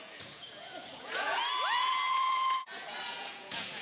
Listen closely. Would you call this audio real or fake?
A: fake